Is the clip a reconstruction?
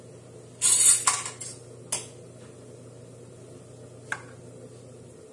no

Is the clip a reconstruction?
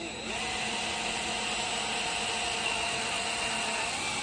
no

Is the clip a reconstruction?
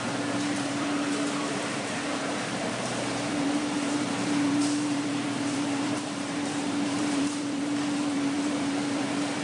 yes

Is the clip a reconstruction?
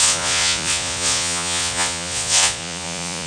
yes